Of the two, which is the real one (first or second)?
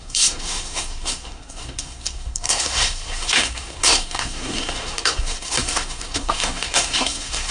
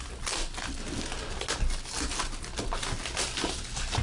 second